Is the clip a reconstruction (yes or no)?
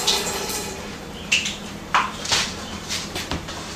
yes